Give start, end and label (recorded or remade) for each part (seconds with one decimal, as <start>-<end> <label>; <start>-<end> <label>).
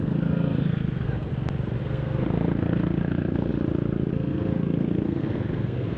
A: 0.0-1.3 remade; 1.3-1.8 recorded; 1.8-3.5 remade; 3.5-4.1 recorded; 4.1-6.0 remade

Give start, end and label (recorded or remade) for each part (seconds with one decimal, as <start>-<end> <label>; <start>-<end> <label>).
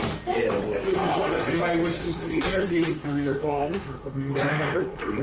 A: 0.0-0.9 recorded; 0.9-1.6 remade; 1.6-2.0 recorded; 2.0-5.2 remade